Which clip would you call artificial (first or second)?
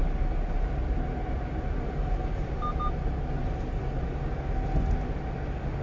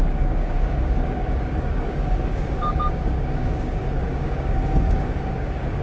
second